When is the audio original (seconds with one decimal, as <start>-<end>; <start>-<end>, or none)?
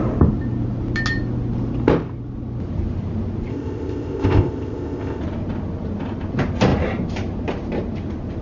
0.0-3.5; 5.2-8.4